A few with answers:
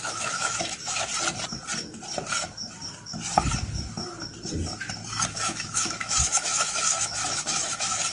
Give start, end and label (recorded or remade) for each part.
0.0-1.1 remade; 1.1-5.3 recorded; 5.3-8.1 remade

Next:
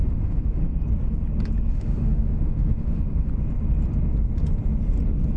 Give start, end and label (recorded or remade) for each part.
0.0-0.6 remade; 0.6-1.7 recorded; 1.7-3.3 remade; 3.3-5.4 recorded